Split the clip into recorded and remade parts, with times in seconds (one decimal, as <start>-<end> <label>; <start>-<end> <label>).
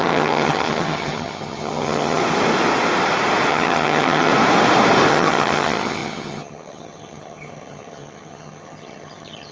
0.0-2.2 remade; 2.2-3.5 recorded; 3.5-4.3 remade; 4.3-5.1 recorded; 5.1-9.5 remade